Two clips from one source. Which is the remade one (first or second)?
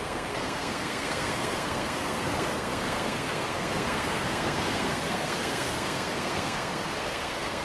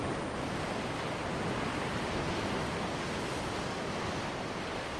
first